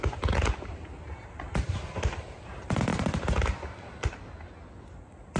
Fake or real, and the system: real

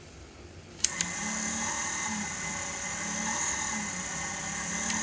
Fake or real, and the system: real